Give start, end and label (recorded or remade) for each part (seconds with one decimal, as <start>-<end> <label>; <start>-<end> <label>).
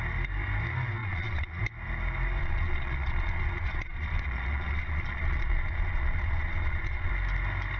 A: 0.0-1.0 recorded; 1.0-1.6 remade; 1.6-2.4 recorded; 2.4-7.1 remade; 7.1-7.8 recorded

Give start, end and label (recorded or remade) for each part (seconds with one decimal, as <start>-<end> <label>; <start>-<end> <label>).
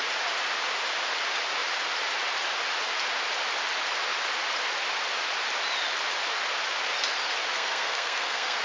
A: 0.0-7.5 recorded; 7.5-8.6 remade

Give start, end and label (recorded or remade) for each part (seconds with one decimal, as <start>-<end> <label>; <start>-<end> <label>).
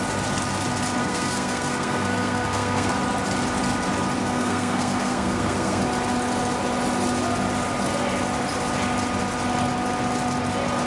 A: 0.0-1.0 recorded; 1.0-2.9 remade; 2.9-4.2 recorded; 4.2-5.8 remade; 5.8-10.9 recorded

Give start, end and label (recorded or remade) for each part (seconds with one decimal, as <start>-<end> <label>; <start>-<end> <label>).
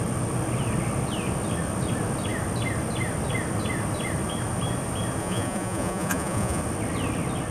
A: 0.0-5.2 recorded; 5.2-6.6 remade; 6.6-7.5 recorded